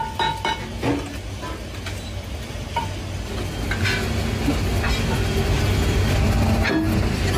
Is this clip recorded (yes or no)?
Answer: yes